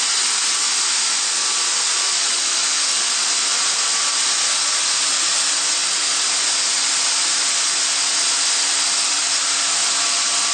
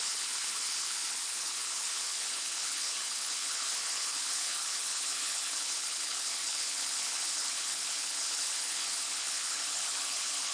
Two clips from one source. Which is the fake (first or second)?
second